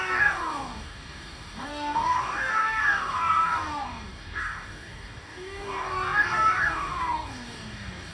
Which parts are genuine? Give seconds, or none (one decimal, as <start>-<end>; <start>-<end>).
none